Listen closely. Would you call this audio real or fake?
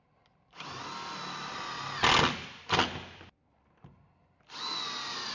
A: real